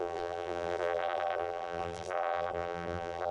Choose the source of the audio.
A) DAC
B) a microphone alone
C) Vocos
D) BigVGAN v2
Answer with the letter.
D